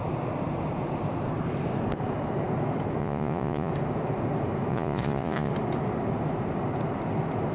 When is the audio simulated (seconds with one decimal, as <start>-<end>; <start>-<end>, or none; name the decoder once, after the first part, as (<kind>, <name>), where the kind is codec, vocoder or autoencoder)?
3.0-3.7 (vocoder, Vocos); 4.7-5.5